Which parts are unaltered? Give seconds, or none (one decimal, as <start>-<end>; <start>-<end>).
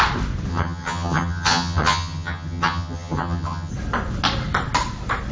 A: 0.0-0.5; 3.7-5.3